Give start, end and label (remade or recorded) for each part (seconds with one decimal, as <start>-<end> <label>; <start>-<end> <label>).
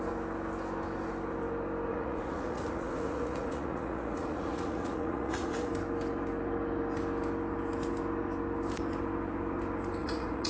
0.0-1.9 recorded; 1.9-5.7 remade; 5.7-10.0 recorded; 10.0-10.5 remade